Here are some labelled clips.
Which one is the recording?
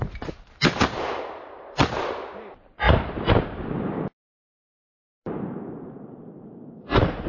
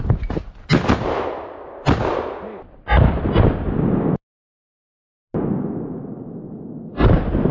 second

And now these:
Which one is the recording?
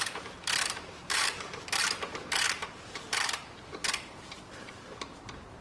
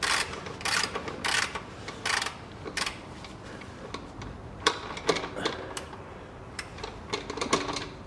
second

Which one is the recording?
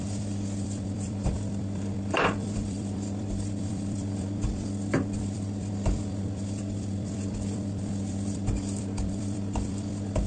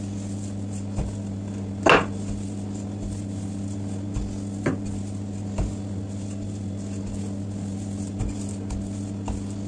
second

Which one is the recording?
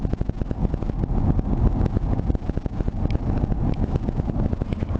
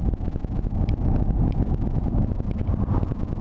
first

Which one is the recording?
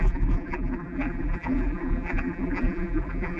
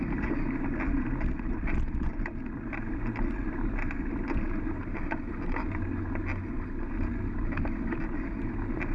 second